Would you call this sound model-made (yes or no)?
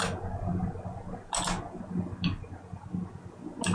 no